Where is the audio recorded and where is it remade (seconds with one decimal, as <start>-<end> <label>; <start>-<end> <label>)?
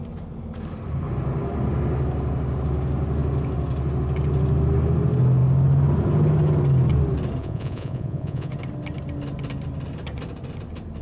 0.0-7.4 recorded; 7.4-8.5 remade; 8.5-11.0 recorded